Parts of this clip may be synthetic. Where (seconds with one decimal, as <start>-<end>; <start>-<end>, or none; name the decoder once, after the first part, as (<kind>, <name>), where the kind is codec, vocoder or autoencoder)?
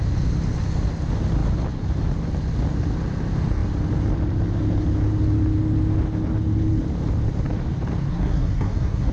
8.1-9.1 (codec, SNAC)